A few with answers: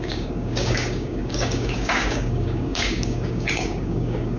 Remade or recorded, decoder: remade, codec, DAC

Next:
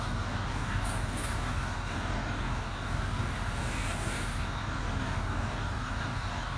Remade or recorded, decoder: remade, codec, DAC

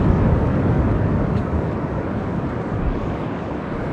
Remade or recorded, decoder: remade, codec, DAC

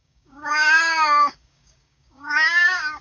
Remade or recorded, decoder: remade, codec, DAC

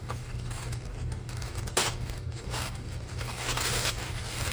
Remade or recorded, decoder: remade, codec, DAC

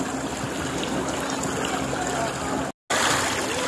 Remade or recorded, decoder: recorded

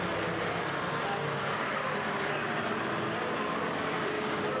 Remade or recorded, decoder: recorded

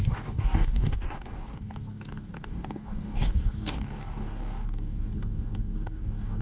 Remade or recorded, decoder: remade, codec, DAC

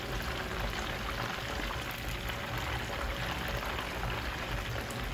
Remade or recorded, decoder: recorded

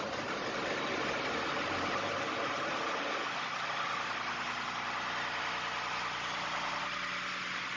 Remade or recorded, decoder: recorded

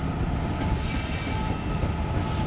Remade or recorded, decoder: recorded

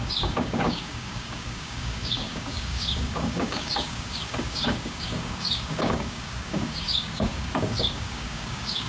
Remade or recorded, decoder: remade, codec, DAC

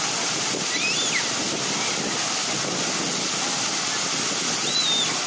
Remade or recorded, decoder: recorded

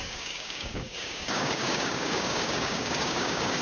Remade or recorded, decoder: remade, codec, DAC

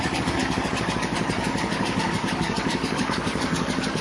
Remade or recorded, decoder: remade, codec, DAC